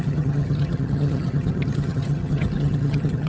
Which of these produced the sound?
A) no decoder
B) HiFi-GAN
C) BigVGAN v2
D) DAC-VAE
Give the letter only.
B